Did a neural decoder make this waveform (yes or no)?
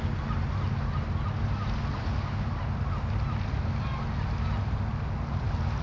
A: no